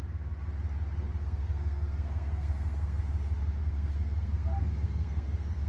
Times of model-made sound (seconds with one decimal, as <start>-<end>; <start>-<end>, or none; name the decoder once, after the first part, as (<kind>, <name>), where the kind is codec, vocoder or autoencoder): 1.2-3.0 (codec, SNAC); 3.6-5.7